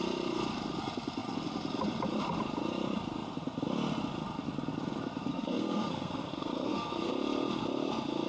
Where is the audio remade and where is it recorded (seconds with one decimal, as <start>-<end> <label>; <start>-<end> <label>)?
0.0-5.3 recorded; 5.3-7.1 remade; 7.1-8.3 recorded